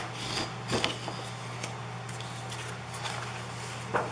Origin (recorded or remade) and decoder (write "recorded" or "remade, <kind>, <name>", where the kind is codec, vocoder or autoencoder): recorded